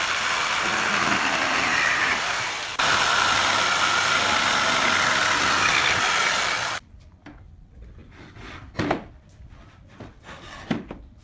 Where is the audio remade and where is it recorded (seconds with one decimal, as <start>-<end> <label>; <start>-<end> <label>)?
0.0-1.7 recorded; 1.7-3.6 remade; 3.6-11.2 recorded